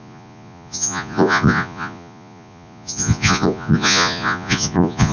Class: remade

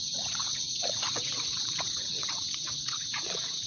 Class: remade